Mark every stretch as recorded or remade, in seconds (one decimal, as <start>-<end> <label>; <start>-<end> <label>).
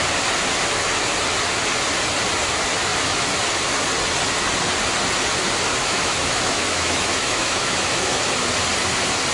0.0-5.7 recorded; 5.7-8.3 remade; 8.3-9.3 recorded